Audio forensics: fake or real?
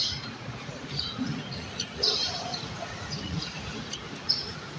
fake